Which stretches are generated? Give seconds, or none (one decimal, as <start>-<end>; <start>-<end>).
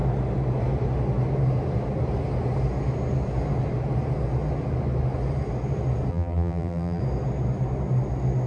6.1-7.0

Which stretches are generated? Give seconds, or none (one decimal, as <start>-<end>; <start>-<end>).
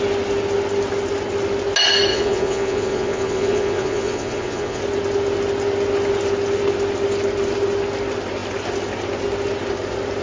2.1-4.8